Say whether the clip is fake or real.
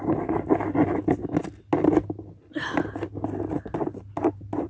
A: real